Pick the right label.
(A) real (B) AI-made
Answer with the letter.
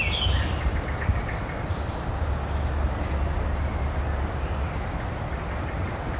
A